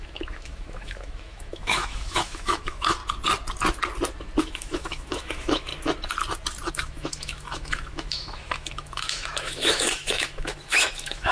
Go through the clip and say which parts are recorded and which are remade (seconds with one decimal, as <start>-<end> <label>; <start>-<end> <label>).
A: 0.0-3.0 remade; 3.0-4.4 recorded; 4.4-5.7 remade; 5.7-6.7 recorded; 6.7-11.3 remade